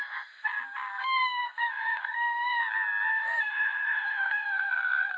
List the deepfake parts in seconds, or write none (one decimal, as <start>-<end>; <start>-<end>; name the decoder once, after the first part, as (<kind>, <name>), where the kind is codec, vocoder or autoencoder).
0.0-0.5 (codec, SNAC); 1.0-2.6; 3.1-5.2